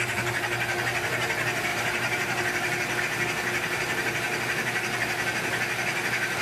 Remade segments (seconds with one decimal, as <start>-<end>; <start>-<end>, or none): 1.7-3.0